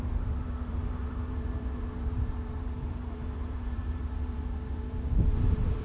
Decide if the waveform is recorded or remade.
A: remade